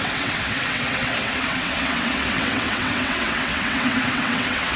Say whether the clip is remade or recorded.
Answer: remade